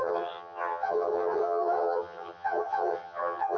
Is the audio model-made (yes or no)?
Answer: yes